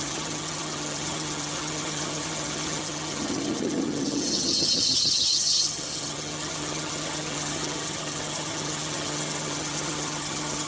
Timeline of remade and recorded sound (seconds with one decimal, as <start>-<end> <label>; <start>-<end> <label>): 0.0-10.7 remade

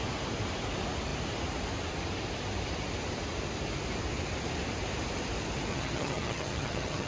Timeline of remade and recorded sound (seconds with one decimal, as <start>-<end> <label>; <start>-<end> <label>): 0.0-5.7 recorded; 5.7-7.1 remade